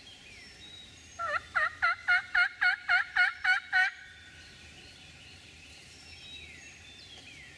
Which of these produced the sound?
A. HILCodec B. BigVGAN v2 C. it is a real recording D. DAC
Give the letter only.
B